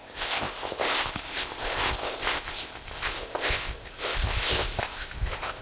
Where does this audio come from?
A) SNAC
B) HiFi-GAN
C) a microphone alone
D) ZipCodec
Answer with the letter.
D